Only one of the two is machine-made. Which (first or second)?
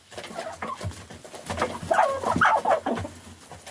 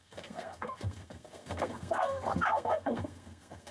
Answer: second